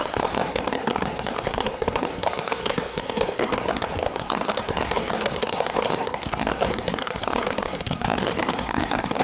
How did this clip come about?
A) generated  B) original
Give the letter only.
A